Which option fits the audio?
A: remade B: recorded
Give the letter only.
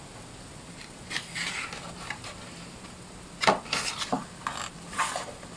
B